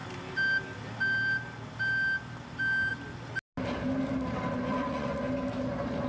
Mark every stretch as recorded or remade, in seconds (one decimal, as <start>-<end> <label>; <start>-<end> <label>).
0.0-4.7 recorded; 4.7-5.2 remade; 5.2-6.1 recorded